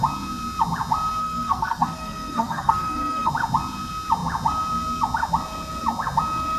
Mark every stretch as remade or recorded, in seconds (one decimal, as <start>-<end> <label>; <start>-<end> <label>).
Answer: 0.0-1.2 recorded; 1.2-3.3 remade; 3.3-6.6 recorded